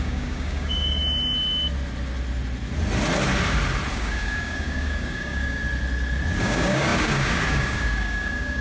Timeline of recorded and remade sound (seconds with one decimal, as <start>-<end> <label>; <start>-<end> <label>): 0.0-1.0 remade; 1.0-3.9 recorded; 3.9-5.6 remade; 5.6-6.4 recorded; 6.4-8.6 remade

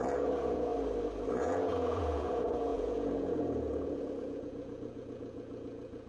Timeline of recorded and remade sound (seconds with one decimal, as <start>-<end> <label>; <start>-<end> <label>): 0.0-0.7 remade; 0.7-1.3 recorded; 1.3-6.1 remade

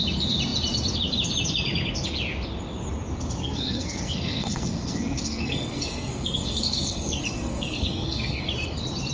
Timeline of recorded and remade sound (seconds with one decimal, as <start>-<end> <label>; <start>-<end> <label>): 0.0-3.4 recorded; 3.4-8.5 remade; 8.5-9.1 recorded